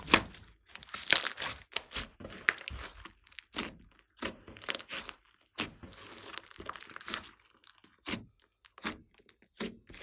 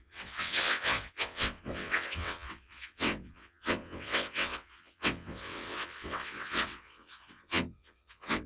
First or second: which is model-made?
second